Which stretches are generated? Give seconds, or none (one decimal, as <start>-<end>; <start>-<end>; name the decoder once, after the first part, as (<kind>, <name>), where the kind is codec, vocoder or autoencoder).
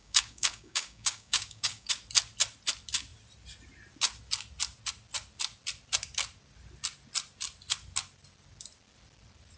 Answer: 0.0-1.9 (codec, DAC)